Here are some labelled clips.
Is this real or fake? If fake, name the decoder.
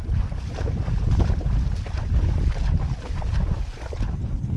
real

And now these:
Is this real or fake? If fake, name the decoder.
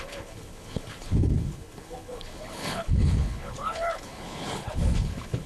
fake, codec, HILCodec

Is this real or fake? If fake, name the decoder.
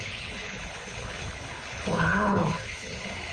fake, codec, HILCodec